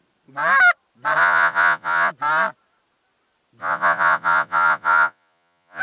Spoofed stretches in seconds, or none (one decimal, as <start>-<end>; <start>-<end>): 1.2-2.1; 3.6-5.8